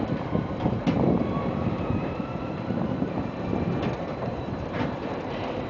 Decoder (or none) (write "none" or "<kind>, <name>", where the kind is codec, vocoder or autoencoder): vocoder, BigVGAN v2